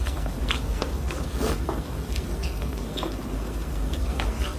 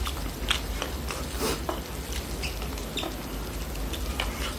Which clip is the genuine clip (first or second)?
second